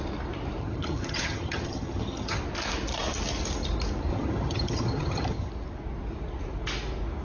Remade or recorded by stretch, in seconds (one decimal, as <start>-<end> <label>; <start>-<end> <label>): 0.0-0.6 recorded; 0.6-2.4 remade; 2.4-4.1 recorded; 4.1-5.5 remade; 5.5-7.2 recorded